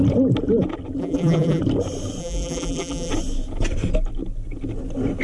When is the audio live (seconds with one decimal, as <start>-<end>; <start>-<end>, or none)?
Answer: 0.0-1.0; 1.6-2.2; 3.1-5.2